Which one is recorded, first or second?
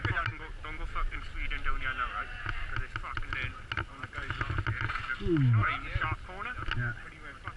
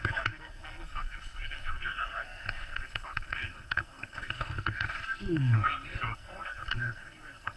first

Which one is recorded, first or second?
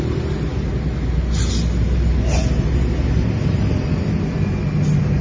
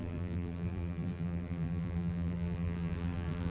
first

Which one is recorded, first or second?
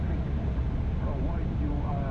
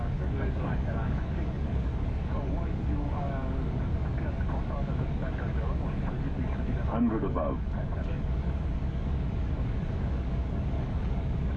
first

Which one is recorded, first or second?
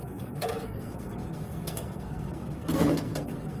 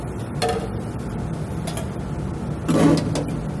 second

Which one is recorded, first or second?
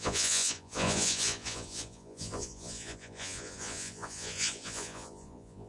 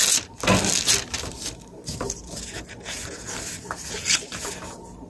second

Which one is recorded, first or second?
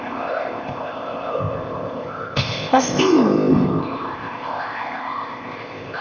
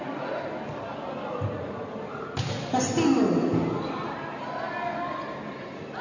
second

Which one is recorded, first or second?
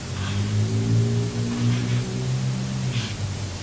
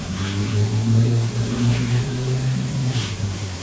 first